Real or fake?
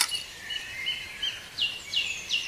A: fake